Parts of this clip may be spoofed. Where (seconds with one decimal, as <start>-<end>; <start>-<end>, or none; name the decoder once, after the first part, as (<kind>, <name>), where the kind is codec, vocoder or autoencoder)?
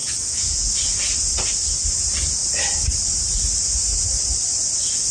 0.0-0.7 (vocoder, Vocos)